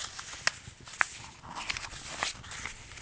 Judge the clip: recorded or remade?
recorded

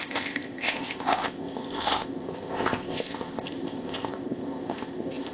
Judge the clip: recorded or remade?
remade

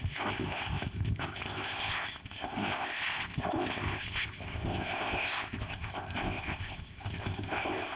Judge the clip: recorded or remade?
remade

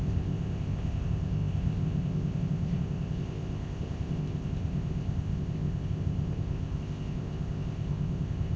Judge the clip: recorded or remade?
remade